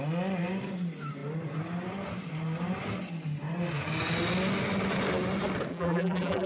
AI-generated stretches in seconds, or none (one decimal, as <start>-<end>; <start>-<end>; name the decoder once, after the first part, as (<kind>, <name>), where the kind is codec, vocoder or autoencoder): 5.7-6.5 (vocoder, BigVGAN v2)